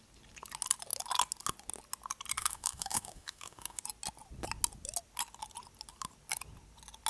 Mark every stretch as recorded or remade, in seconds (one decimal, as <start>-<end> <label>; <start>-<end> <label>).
0.0-2.4 recorded; 2.4-3.8 remade; 3.8-7.1 recorded